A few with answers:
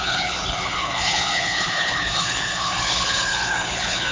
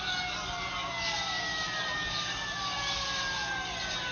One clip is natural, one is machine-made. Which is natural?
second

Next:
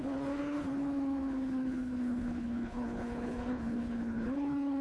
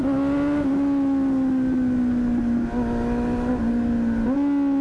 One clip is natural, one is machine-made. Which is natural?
second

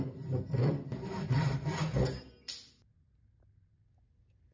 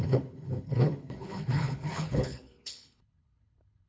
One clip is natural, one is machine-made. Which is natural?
first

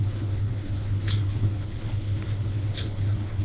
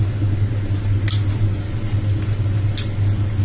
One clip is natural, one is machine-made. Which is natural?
second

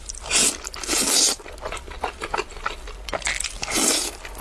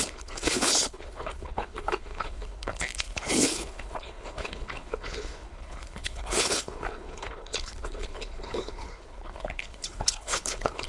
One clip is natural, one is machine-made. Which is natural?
first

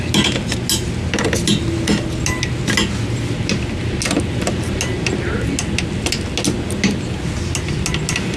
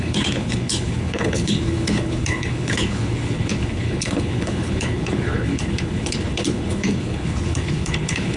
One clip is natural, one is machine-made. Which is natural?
first